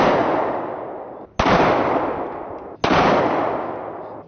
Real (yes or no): yes